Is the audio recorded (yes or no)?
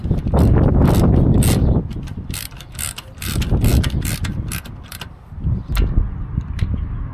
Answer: yes